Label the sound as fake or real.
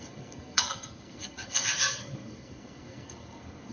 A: fake